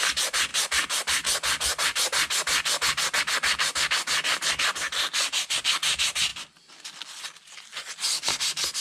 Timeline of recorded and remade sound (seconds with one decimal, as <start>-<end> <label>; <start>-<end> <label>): 0.0-8.8 recorded